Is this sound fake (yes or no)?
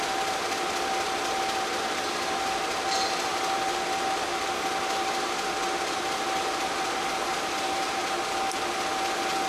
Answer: no